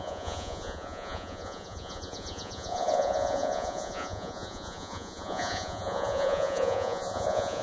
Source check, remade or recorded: remade